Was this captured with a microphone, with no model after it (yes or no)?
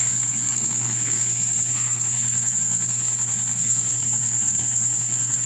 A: no